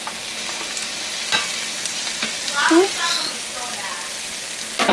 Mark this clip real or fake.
real